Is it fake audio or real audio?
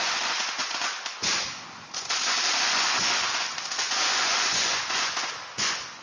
fake